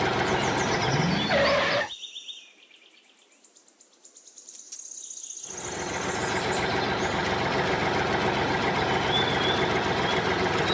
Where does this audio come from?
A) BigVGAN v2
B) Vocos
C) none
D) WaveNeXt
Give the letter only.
C